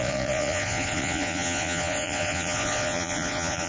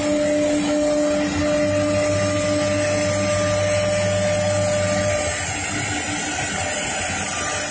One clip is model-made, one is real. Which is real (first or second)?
second